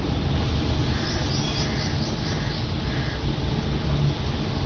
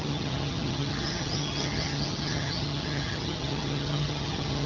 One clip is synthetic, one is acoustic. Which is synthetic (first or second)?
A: second